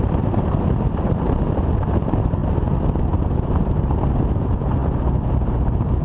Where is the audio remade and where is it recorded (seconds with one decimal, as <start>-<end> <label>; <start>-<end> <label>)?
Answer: 0.0-2.4 remade; 2.4-3.4 recorded; 3.4-6.0 remade